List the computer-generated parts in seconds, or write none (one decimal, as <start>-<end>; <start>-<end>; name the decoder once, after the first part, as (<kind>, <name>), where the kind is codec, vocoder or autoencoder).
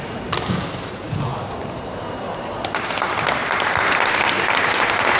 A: none